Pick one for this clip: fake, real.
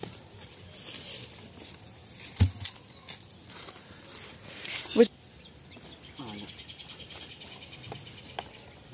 real